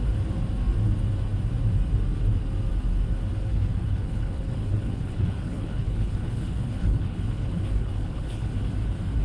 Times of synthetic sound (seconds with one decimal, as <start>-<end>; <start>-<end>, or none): 3.5-8.5